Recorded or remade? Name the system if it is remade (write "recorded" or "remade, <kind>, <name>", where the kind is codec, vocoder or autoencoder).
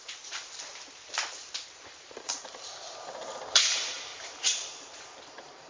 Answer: remade, vocoder, BigVGAN v2